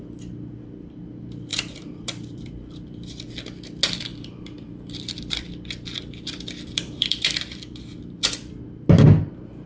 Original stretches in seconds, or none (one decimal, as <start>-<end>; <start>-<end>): 0.0-1.5; 3.4-4.1; 8.6-9.7

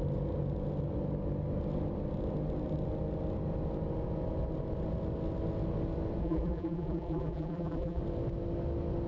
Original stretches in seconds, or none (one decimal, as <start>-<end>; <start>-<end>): 0.0-6.2; 8.0-9.1

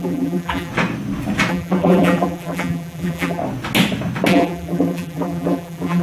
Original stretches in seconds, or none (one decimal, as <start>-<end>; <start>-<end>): 0.7-1.5; 3.4-4.3

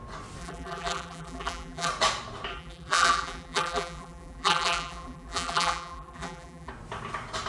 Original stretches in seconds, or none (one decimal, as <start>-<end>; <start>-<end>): 0.0-0.4; 1.9-2.5; 6.7-7.5

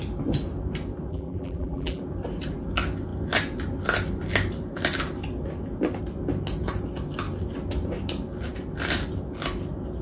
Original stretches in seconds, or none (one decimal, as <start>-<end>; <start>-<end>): 0.0-1.1; 2.0-10.0

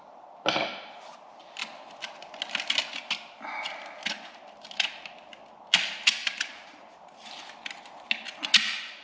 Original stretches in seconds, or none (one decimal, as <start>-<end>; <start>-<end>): 0.0-6.2; 7.1-9.0

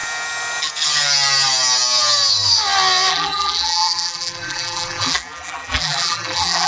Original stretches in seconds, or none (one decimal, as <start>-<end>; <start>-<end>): 0.0-3.1